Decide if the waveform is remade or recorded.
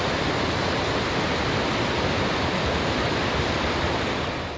recorded